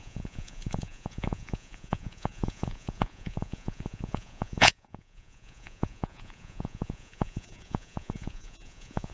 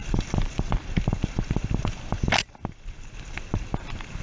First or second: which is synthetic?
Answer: first